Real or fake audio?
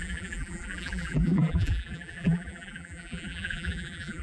fake